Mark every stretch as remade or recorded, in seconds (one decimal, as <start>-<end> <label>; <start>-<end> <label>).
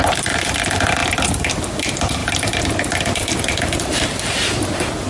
0.0-5.1 recorded